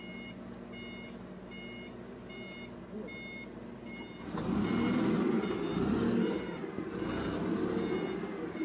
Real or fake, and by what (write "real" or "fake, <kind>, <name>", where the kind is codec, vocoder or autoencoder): real